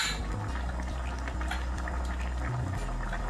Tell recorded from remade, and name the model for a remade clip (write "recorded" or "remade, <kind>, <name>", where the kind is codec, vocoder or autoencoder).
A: recorded